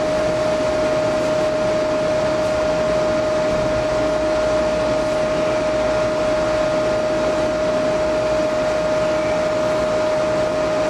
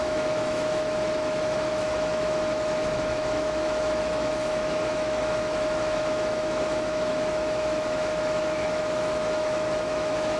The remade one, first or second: second